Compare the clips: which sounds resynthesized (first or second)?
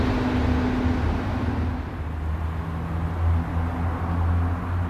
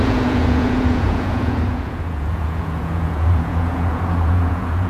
second